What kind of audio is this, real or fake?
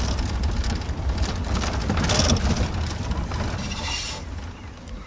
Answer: real